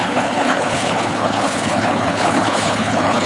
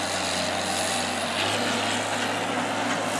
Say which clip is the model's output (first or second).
first